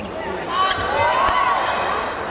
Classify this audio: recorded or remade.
recorded